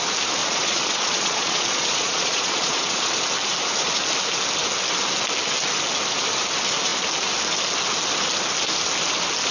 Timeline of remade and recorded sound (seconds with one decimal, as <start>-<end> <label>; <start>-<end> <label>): 0.0-0.4 recorded; 0.4-3.1 remade; 3.1-9.5 recorded